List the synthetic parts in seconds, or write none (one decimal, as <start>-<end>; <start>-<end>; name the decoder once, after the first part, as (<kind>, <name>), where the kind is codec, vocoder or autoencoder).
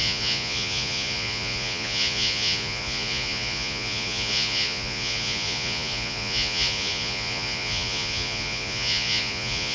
0.0-9.7 (vocoder, Vocos)